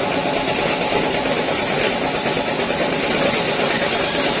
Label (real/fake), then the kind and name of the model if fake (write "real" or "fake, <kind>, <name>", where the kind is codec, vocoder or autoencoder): real